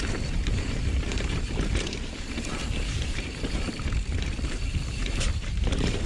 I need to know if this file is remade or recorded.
remade